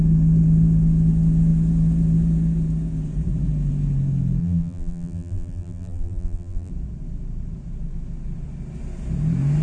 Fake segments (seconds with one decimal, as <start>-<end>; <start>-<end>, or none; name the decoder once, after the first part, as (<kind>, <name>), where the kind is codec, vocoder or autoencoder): 4.4-6.7 (vocoder, BigVGAN v2)